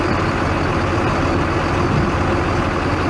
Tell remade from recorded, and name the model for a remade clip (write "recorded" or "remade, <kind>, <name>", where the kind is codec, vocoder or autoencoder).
recorded